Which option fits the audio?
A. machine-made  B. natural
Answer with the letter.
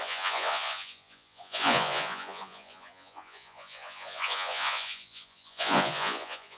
A